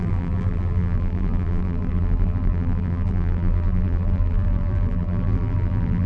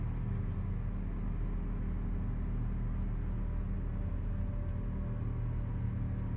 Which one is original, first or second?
second